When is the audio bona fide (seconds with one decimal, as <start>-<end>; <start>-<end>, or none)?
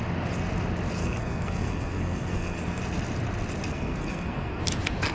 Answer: 0.0-1.0; 2.8-3.7; 4.6-5.1